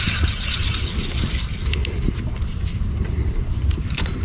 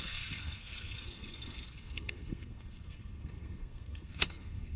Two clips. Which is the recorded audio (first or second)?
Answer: first